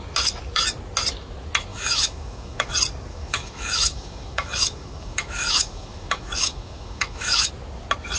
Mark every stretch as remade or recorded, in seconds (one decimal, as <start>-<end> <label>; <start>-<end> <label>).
0.0-1.7 recorded; 1.7-2.7 remade; 2.7-3.1 recorded; 3.1-7.5 remade; 7.5-8.2 recorded